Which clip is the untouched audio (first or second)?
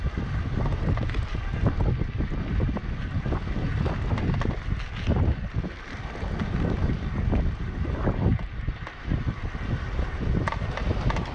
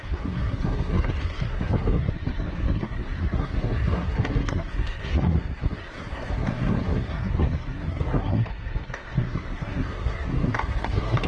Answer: first